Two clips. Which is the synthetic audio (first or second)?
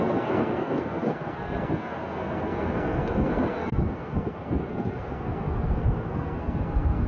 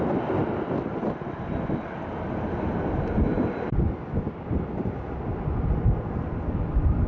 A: first